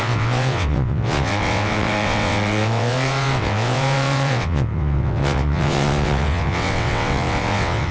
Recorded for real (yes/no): no